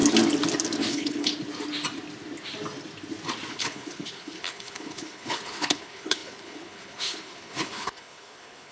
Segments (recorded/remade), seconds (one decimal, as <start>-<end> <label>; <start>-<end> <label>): 0.0-0.9 recorded; 0.9-1.3 remade; 1.3-3.5 recorded; 3.5-8.7 remade